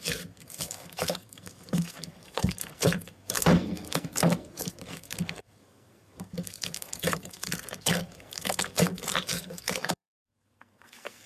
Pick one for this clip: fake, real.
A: fake